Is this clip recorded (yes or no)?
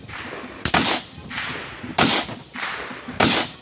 yes